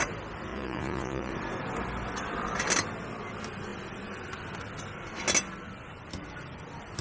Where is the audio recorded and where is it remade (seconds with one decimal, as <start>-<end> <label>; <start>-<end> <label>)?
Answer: 0.0-0.5 recorded; 0.5-1.3 remade; 1.3-7.0 recorded